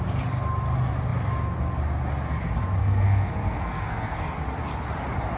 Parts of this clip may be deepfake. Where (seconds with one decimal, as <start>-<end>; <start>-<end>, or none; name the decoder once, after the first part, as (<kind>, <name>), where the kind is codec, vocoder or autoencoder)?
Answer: 2.8-4.3 (codec, SNAC)